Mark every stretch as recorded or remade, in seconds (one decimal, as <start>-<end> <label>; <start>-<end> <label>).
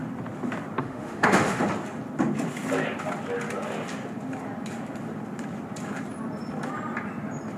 0.0-0.8 recorded; 0.8-1.6 remade; 1.6-7.6 recorded